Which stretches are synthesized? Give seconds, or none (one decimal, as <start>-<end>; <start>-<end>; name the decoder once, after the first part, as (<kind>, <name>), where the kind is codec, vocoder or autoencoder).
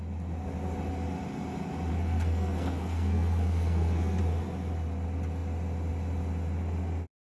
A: 1.9-4.2 (codec, SNAC)